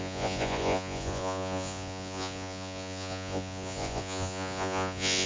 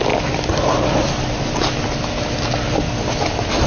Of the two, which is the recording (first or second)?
second